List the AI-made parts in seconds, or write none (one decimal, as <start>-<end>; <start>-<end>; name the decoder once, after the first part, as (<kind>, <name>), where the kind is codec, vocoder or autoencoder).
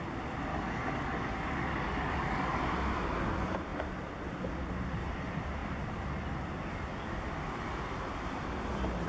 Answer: 0.5-2.6 (codec, DAC)